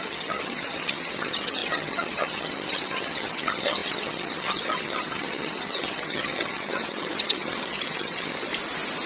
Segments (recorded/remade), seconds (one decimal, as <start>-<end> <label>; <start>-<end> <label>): 0.0-8.5 remade; 8.5-9.1 recorded